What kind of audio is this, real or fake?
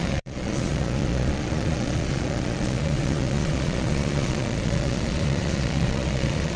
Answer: fake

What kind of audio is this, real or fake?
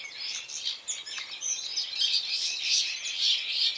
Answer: real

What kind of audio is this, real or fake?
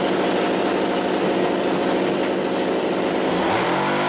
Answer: real